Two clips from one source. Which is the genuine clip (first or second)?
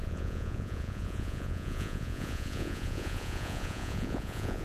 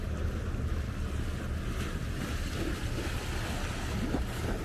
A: second